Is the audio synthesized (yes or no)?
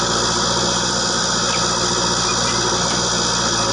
no